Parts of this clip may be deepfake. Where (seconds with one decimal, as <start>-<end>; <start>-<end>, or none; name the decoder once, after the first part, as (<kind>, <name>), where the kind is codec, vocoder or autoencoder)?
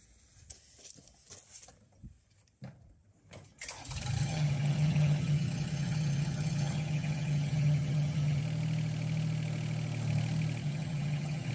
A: 4.2-8.4 (vocoder, HiFi-GAN); 10.6-11.5